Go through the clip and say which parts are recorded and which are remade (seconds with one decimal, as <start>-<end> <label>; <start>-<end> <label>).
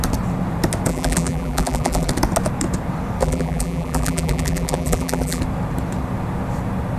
0.0-0.9 recorded; 0.9-2.1 remade; 2.1-3.2 recorded; 3.2-5.4 remade; 5.4-7.0 recorded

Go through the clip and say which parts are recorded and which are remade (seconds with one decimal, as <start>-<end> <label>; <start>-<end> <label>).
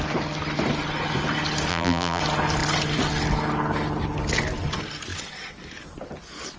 0.0-1.7 recorded; 1.7-2.2 remade; 2.2-6.6 recorded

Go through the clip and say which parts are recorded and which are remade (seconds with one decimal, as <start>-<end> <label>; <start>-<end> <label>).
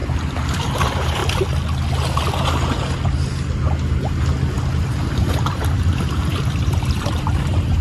0.0-0.6 recorded; 0.6-1.2 remade; 1.2-5.2 recorded; 5.2-7.8 remade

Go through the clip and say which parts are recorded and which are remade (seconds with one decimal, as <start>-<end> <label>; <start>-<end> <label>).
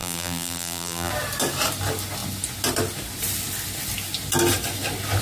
0.0-1.1 remade; 1.1-5.2 recorded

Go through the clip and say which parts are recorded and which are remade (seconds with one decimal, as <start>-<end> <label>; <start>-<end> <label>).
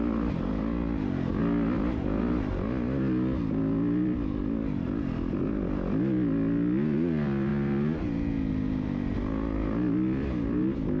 0.0-11.0 recorded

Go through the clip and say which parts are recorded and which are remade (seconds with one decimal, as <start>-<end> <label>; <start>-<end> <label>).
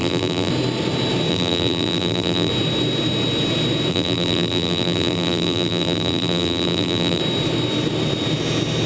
0.0-0.5 remade; 0.5-1.3 recorded; 1.3-2.5 remade; 2.5-3.9 recorded; 3.9-7.2 remade; 7.2-8.9 recorded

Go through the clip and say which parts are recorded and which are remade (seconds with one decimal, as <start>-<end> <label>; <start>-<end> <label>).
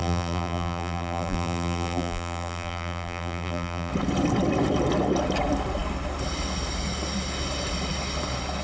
0.0-3.9 remade; 3.9-8.6 recorded